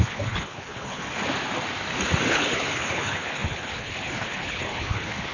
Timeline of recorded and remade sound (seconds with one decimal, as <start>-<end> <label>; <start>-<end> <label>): 0.0-1.0 remade; 1.0-2.3 recorded; 2.3-5.3 remade